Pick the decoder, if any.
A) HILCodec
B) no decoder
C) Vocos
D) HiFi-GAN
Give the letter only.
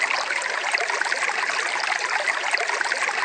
B